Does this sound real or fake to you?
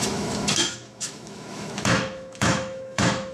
fake